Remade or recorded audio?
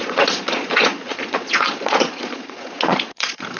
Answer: remade